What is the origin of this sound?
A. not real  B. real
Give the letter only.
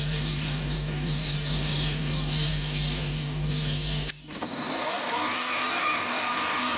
A